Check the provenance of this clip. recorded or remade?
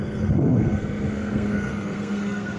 remade